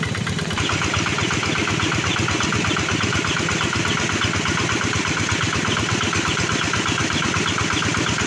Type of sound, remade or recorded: recorded